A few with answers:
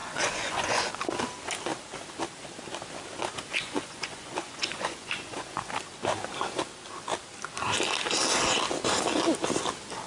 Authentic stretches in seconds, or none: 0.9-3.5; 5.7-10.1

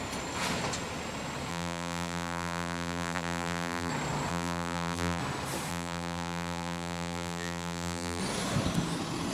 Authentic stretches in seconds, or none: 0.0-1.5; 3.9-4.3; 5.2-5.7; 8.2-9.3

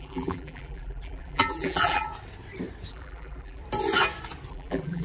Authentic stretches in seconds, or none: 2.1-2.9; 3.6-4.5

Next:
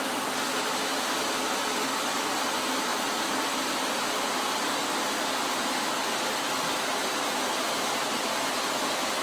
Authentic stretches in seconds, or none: 0.0-2.9; 4.0-9.2